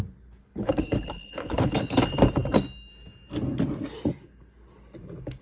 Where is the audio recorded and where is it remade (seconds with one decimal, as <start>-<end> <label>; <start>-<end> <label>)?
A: 0.0-0.4 recorded; 0.4-1.8 remade; 1.8-5.4 recorded